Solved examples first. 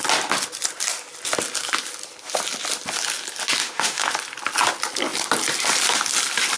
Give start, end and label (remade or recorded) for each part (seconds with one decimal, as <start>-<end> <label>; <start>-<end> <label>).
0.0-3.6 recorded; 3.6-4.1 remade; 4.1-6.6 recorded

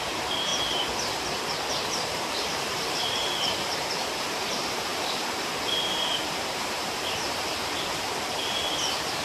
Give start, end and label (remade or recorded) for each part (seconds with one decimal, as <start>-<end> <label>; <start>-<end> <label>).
0.0-0.5 remade; 0.5-1.7 recorded; 1.7-9.2 remade

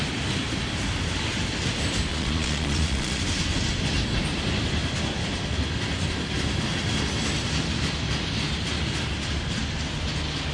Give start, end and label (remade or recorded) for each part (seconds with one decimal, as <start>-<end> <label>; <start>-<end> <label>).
0.0-2.1 recorded; 2.1-3.2 remade; 3.2-10.5 recorded